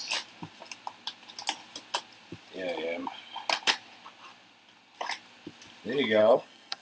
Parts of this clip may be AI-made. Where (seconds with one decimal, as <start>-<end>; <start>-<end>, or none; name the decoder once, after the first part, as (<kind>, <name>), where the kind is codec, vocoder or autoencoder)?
6.2-6.8 (codec, SNAC)